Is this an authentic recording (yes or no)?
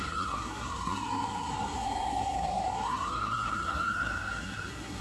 no